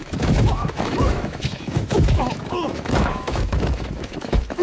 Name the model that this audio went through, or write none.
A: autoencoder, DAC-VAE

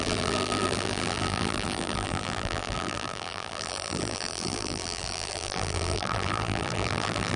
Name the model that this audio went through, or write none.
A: vocoder, BigVGAN v2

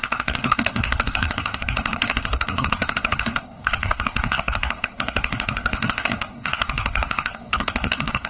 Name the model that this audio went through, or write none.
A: codec, SNAC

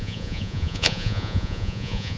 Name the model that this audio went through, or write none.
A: vocoder, Vocos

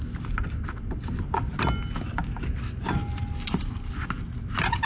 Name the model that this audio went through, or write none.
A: none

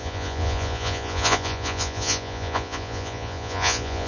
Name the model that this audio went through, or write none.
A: vocoder, Vocos